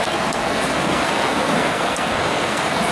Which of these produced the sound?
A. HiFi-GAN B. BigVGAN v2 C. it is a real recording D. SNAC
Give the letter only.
D